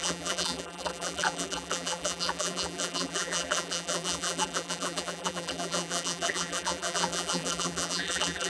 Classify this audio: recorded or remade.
remade